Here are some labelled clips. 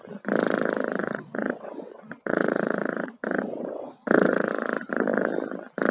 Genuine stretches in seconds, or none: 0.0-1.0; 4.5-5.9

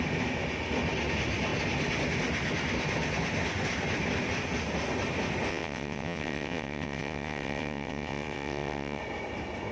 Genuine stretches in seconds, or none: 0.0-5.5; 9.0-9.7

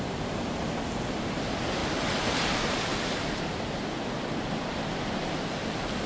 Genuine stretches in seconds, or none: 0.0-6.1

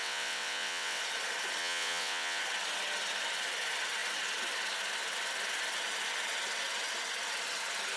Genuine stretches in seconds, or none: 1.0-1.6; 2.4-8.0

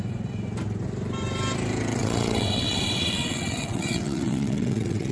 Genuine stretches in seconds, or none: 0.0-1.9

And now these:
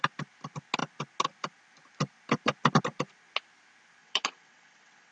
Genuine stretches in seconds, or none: 0.0-4.0

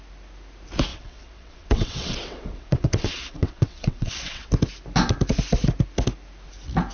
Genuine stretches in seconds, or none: 0.0-0.9; 4.5-6.9

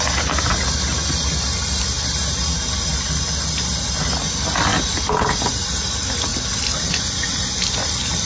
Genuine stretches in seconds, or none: 0.0-8.2